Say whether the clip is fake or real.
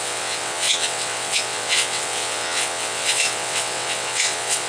fake